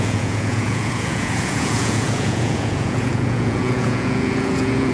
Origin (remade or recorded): remade